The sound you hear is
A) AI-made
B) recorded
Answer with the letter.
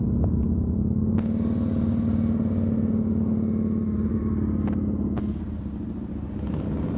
B